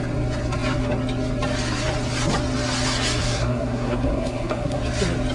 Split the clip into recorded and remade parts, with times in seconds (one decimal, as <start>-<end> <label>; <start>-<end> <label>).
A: 0.0-3.2 recorded; 3.2-4.8 remade; 4.8-5.3 recorded